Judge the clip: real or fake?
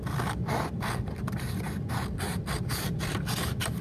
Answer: fake